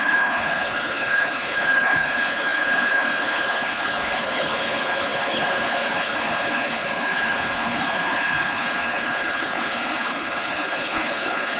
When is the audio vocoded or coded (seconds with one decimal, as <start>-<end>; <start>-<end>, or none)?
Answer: 0.0-11.6